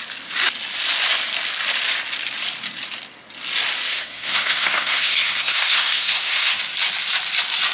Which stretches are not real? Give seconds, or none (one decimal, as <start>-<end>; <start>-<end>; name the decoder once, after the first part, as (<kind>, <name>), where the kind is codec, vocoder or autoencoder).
3.9-6.6 (codec, SNAC)